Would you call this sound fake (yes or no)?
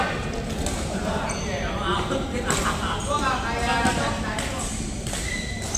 no